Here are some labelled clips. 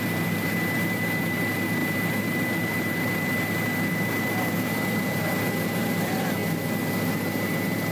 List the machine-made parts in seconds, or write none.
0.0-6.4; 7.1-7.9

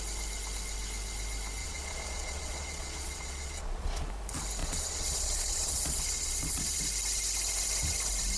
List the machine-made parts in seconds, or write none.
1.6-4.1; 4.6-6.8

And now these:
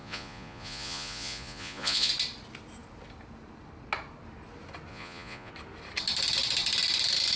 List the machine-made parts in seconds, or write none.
0.0-2.1; 4.9-5.5

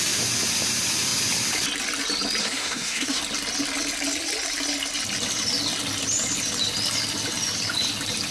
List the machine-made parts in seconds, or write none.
2.4-3.2

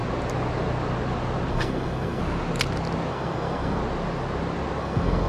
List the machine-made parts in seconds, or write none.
1.5-2.2; 3.1-3.8; 4.8-5.3

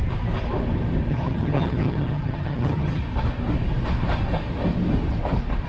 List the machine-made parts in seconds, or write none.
1.1-3.0

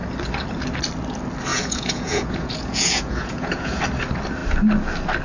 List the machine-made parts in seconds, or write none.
1.5-3.8